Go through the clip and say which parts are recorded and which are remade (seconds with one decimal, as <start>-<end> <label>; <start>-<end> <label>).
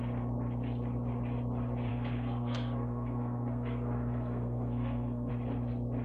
0.0-1.9 recorded; 1.9-5.3 remade; 5.3-6.0 recorded